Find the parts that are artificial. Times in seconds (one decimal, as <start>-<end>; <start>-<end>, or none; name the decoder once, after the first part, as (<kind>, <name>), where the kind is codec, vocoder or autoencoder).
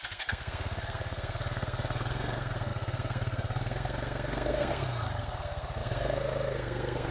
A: 0.0-7.1 (codec, SNAC)